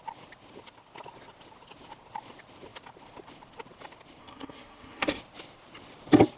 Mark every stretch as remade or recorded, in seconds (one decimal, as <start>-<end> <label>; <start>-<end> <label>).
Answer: 0.0-4.2 recorded; 4.2-5.2 remade; 5.2-6.4 recorded